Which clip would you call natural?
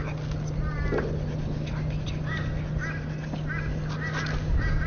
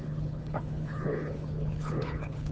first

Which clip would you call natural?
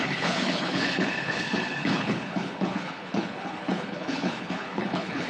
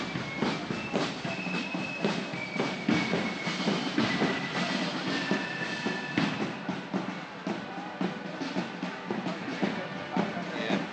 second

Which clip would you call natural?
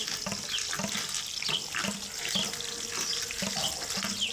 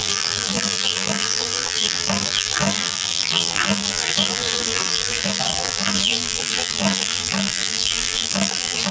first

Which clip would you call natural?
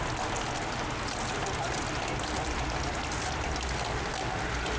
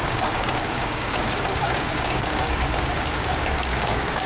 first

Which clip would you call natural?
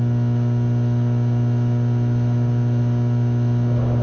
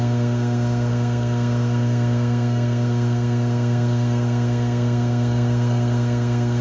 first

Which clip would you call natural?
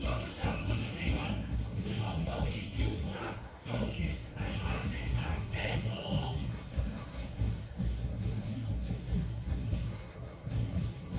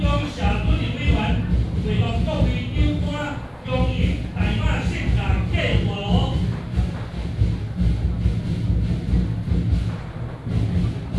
second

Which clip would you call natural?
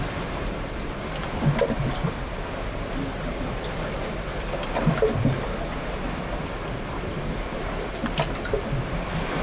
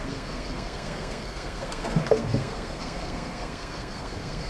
first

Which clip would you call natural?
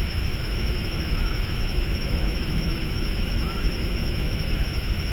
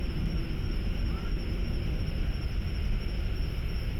second